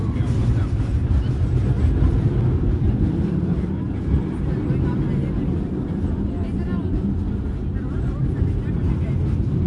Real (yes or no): yes